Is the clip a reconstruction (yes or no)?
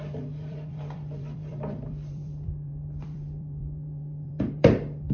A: yes